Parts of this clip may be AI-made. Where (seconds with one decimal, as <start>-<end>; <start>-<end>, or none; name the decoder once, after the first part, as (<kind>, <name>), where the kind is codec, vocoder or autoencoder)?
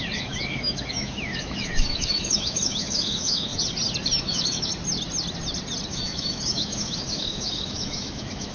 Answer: 0.0-3.5 (autoencoder, DAC-VAE); 4.2-4.7; 5.9-8.5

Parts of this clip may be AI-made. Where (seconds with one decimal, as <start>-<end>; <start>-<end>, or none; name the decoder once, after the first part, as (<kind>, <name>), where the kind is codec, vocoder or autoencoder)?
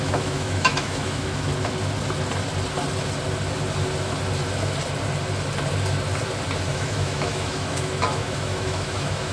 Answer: 0.0-1.5 (autoencoder, DAC-VAE); 6.7-9.3